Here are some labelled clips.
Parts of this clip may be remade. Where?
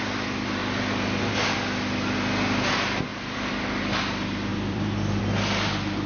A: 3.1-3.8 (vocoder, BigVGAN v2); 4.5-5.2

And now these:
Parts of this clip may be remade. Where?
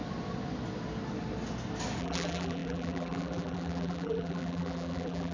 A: 2.0-5.3 (vocoder, BigVGAN v2)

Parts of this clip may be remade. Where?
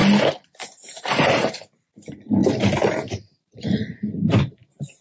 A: 0.6-5.0 (vocoder, BigVGAN v2)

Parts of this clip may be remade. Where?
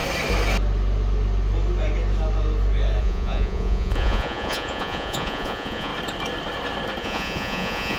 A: 3.0-5.9 (vocoder, Vocos); 7.0-8.0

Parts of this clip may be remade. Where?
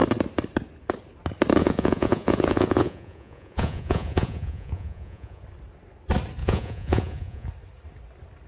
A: 1.6-5.4 (vocoder, Vocos); 6.4-7.5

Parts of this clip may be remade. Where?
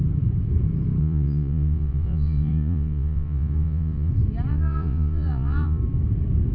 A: 1.0-4.1 (vocoder, Vocos); 4.5-5.8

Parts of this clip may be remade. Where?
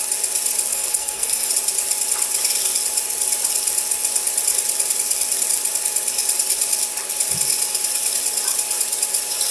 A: 0.7-1.5 (codec, SNAC)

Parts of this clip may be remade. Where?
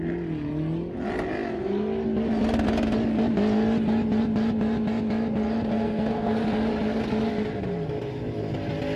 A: 5.7-6.3 (codec, SNAC)